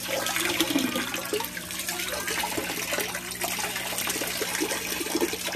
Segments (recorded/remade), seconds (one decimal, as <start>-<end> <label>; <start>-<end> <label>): 0.0-5.6 recorded